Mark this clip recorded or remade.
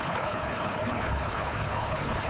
remade